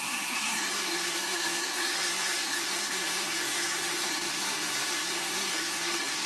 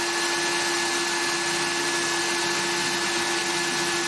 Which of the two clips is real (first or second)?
second